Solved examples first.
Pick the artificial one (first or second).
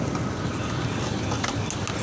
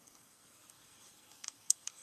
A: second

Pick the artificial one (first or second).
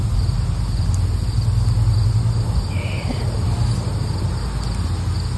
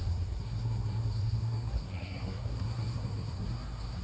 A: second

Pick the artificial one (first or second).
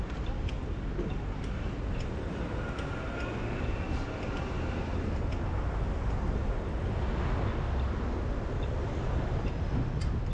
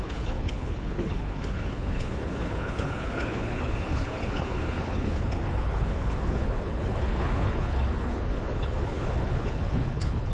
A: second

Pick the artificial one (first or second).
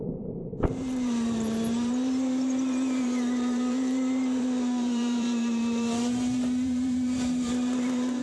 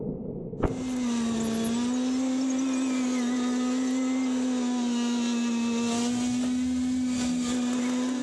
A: first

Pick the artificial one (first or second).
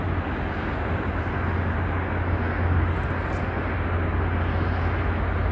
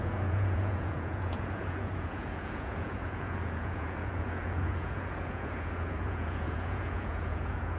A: second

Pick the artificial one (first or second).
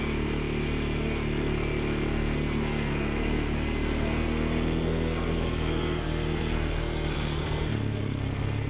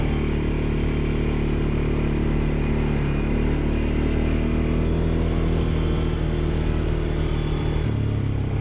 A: first